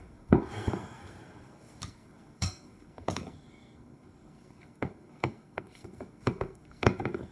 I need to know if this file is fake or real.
fake